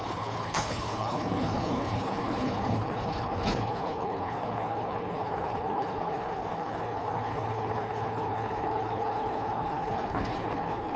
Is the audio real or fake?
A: fake